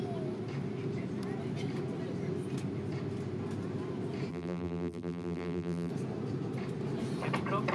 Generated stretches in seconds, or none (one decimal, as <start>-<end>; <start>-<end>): 4.3-5.9